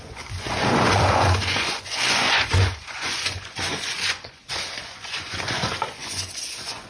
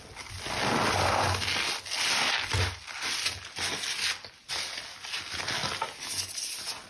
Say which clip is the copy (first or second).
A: first